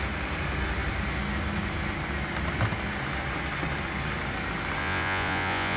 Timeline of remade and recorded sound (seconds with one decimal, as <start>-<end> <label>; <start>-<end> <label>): 0.0-4.8 recorded; 4.8-5.8 remade